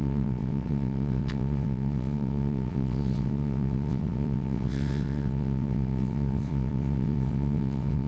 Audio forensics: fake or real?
fake